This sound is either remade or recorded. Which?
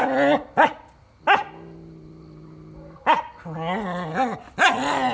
recorded